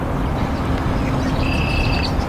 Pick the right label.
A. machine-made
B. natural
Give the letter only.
B